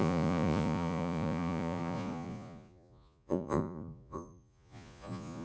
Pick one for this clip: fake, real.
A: fake